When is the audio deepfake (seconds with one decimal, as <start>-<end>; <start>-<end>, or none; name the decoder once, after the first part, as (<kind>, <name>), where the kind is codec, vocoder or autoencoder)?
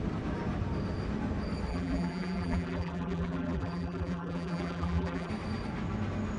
1.7-5.3 (vocoder, BigVGAN v2)